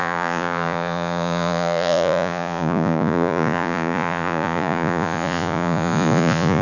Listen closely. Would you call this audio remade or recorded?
remade